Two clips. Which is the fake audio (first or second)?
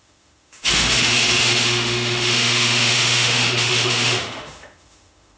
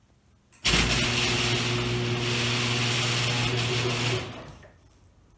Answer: first